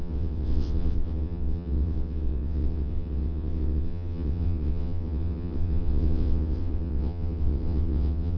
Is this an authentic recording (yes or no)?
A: no